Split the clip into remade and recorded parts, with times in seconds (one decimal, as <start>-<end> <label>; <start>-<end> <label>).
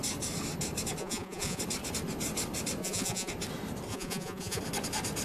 0.0-1.0 recorded; 1.0-1.6 remade; 1.6-2.8 recorded; 2.8-3.3 remade; 3.3-3.9 recorded; 3.9-4.6 remade; 4.6-5.2 recorded